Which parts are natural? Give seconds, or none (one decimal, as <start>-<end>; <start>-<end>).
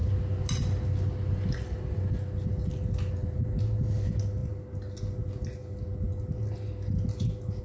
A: 0.0-7.6